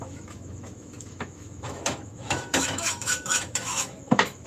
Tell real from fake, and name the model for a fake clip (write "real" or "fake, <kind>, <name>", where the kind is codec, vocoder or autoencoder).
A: fake, autoencoder, DAC-VAE